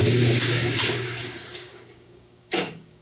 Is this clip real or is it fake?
fake